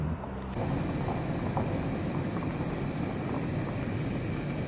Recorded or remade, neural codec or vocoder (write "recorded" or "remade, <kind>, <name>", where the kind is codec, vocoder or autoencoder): recorded